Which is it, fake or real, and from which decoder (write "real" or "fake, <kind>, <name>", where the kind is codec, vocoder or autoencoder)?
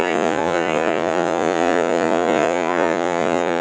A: fake, vocoder, Vocos